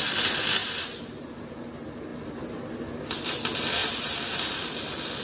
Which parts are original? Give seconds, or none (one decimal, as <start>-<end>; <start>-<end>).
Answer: 0.0-0.6; 1.2-3.8; 4.7-5.2